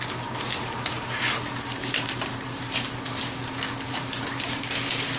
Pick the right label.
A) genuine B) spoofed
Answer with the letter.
B